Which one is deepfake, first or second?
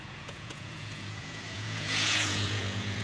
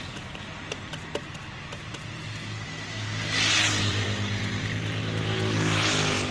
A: first